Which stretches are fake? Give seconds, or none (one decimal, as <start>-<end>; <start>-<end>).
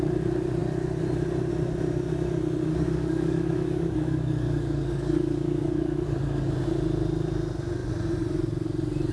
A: 2.7-6.5